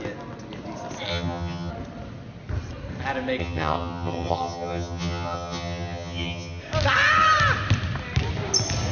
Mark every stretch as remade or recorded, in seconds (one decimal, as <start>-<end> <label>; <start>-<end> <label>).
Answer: 0.0-1.1 recorded; 1.1-1.7 remade; 1.7-3.4 recorded; 3.4-6.6 remade; 6.6-8.9 recorded